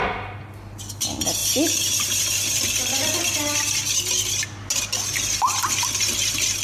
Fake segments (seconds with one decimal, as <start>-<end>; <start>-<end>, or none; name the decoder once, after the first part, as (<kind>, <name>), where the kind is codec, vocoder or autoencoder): none